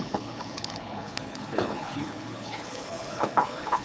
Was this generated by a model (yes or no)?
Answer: yes